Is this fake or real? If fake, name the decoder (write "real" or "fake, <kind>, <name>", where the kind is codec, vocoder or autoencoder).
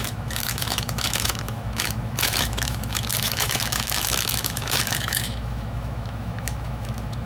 fake, autoencoder, DAC-VAE